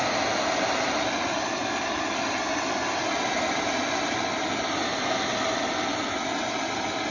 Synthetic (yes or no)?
no